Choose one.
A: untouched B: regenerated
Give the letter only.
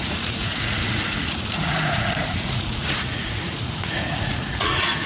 B